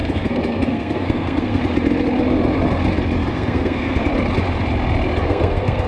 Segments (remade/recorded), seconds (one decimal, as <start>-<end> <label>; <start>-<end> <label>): 0.0-1.6 remade; 1.6-3.3 recorded; 3.3-4.1 remade; 4.1-5.2 recorded; 5.2-5.9 remade